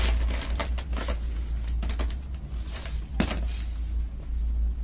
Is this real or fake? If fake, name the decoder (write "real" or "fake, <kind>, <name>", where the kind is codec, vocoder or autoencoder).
real